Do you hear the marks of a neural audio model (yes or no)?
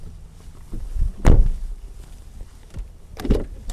yes